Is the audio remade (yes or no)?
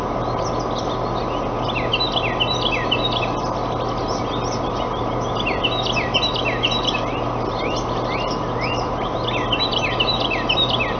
no